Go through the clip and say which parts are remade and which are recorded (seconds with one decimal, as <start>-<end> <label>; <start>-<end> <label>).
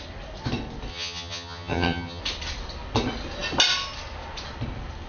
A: 0.0-0.9 recorded; 0.9-2.2 remade; 2.2-5.1 recorded